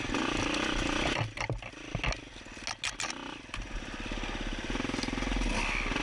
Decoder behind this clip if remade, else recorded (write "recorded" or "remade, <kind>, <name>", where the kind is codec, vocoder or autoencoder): recorded